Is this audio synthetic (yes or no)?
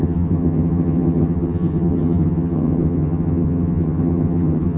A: yes